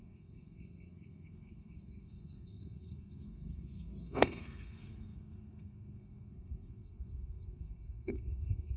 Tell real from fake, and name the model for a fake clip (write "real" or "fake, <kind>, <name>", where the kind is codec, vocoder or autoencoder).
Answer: fake, codec, SNAC